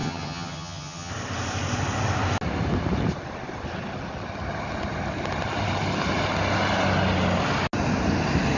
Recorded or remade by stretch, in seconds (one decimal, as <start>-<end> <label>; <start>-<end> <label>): 0.0-1.1 remade; 1.1-8.6 recorded